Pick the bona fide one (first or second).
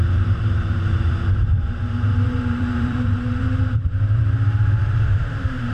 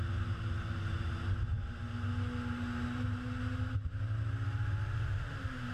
second